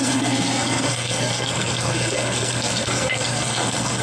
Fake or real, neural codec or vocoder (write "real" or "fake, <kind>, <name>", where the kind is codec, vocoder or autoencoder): fake, codec, SNAC